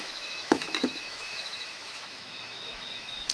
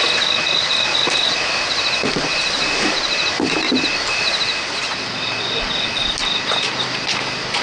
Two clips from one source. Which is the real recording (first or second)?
second